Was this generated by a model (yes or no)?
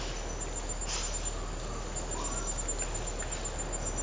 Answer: no